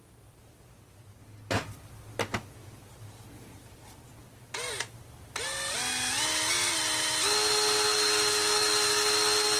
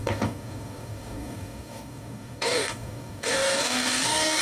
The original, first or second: first